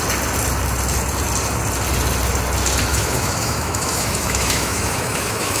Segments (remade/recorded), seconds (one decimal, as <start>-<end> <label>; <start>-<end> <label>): 0.0-2.9 recorded; 2.9-5.6 remade